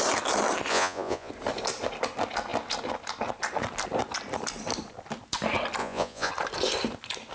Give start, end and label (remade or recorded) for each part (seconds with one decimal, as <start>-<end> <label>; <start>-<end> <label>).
0.0-0.7 recorded; 0.7-1.3 remade; 1.3-5.8 recorded; 5.8-6.3 remade; 6.3-7.3 recorded